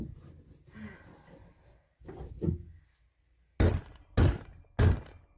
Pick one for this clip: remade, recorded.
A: recorded